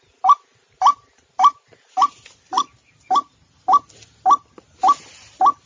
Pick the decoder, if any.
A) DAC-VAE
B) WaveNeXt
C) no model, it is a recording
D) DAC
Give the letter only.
C